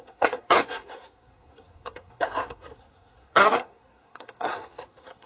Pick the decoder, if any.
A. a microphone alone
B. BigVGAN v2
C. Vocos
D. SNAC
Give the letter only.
D